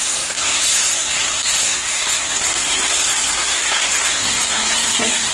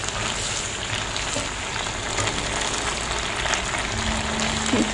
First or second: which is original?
second